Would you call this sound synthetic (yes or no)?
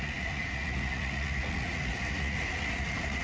yes